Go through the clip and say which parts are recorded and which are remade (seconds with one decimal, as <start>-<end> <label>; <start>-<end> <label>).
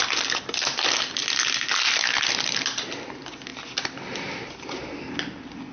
0.0-5.7 recorded